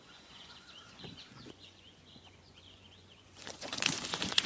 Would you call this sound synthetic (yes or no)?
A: yes